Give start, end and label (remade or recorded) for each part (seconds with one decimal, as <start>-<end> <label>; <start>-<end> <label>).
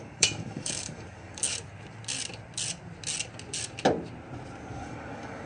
0.0-1.4 remade; 1.4-4.7 recorded; 4.7-5.5 remade